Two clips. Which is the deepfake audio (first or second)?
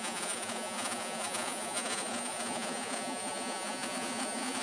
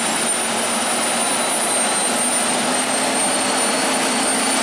first